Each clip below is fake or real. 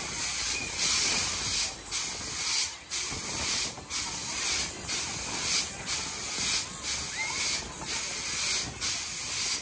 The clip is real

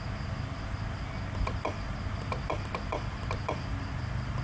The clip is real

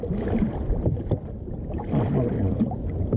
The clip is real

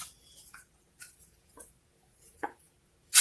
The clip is fake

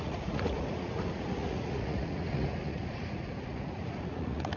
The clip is fake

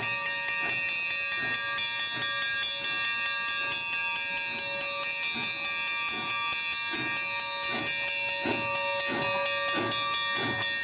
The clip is real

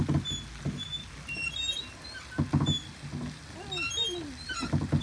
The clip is real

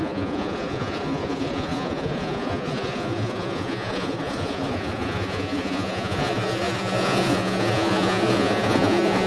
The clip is fake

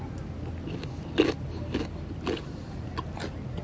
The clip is real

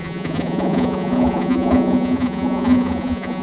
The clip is fake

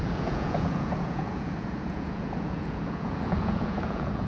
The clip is fake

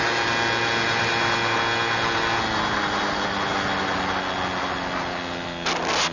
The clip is real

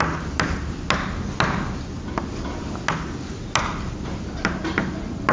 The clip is real